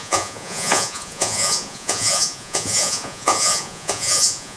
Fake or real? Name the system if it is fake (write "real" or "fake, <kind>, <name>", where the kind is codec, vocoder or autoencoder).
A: fake, vocoder, Vocos